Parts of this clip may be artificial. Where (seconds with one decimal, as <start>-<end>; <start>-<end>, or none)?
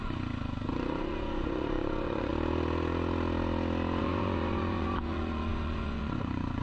0.0-2.3; 4.0-6.6